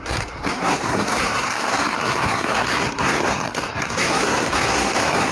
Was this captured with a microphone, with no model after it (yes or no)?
no